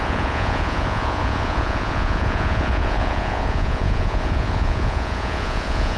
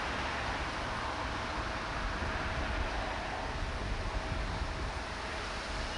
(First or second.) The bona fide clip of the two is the second